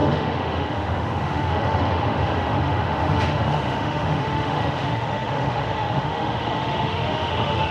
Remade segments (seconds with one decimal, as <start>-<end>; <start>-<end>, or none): 0.0-7.7